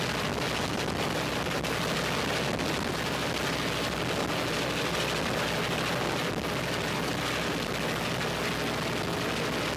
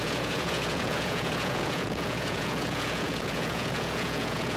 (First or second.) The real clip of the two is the first